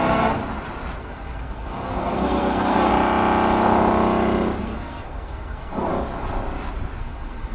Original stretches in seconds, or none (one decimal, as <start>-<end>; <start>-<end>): 0.4-1.0; 2.9-4.6; 5.9-7.0